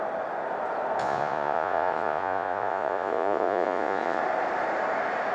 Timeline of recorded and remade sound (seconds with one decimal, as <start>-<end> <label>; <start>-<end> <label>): 0.0-1.0 recorded; 1.0-4.2 remade; 4.2-5.3 recorded